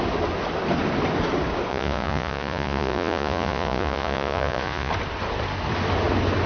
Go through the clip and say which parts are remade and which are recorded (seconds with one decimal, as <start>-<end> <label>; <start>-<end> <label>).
0.0-1.7 recorded; 1.7-4.9 remade; 4.9-6.5 recorded